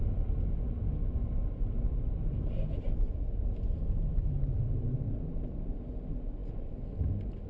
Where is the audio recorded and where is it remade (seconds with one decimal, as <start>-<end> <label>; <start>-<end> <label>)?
0.0-7.5 recorded

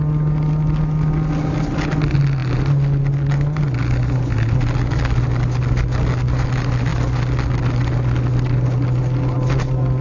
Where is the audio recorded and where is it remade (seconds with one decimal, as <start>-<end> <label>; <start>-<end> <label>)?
0.0-10.0 recorded

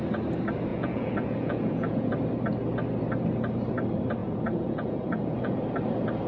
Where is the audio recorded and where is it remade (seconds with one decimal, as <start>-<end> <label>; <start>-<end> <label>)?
0.0-0.7 recorded; 0.7-2.1 remade; 2.1-4.2 recorded; 4.2-5.6 remade; 5.6-6.3 recorded